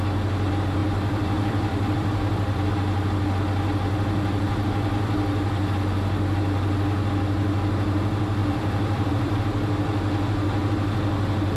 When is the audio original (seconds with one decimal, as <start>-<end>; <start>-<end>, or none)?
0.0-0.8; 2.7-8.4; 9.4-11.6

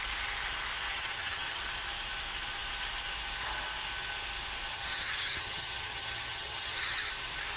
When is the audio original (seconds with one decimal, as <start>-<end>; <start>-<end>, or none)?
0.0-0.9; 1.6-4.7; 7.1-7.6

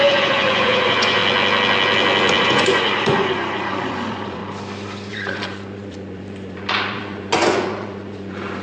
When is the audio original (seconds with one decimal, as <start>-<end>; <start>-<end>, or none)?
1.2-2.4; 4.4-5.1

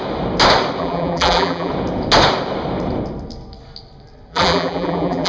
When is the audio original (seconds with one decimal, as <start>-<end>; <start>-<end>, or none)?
0.0-0.8; 1.7-4.3

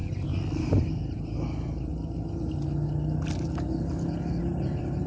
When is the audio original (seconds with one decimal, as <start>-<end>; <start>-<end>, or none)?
0.0-0.6; 1.9-4.4